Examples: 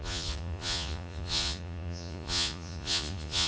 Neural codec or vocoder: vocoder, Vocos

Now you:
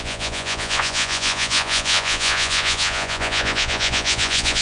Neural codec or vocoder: vocoder, Vocos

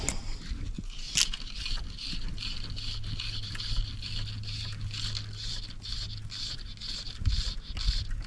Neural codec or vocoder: none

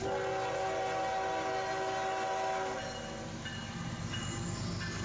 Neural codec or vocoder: none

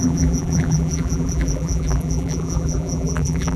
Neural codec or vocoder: vocoder, BigVGAN v2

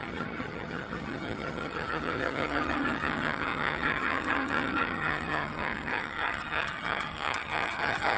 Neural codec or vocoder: vocoder, HiFi-GAN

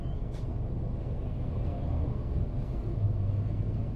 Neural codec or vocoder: codec, SNAC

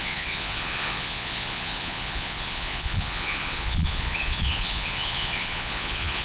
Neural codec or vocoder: vocoder, Vocos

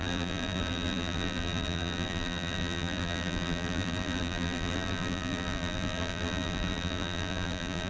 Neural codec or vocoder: vocoder, BigVGAN v2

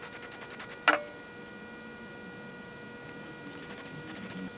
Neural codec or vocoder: none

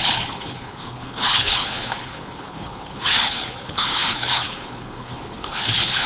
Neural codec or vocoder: codec, HILCodec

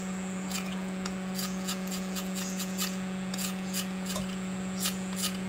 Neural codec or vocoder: vocoder, Vocos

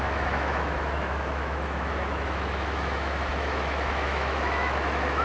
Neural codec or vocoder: autoencoder, DAC-VAE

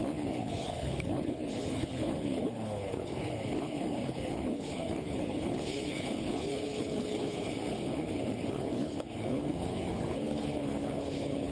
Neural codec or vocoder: codec, HILCodec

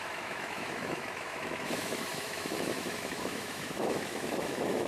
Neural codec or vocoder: autoencoder, DAC-VAE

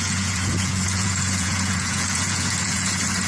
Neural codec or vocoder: vocoder, Vocos